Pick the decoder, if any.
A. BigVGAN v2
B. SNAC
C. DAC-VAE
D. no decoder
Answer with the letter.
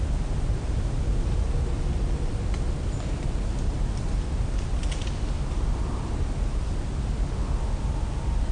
D